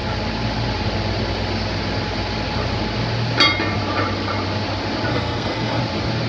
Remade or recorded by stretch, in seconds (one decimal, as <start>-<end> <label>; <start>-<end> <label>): 0.0-5.1 recorded; 5.1-5.8 remade; 5.8-6.3 recorded